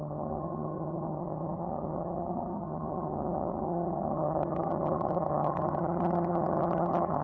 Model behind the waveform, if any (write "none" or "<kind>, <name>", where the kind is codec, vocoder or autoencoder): vocoder, HiFi-GAN